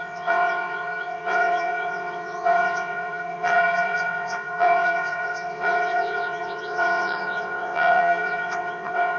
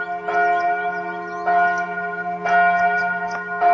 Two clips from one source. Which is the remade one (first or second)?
first